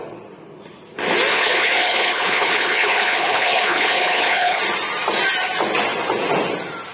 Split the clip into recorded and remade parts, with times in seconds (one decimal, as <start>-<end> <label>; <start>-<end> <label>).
0.0-1.3 recorded; 1.3-4.6 remade; 4.6-6.9 recorded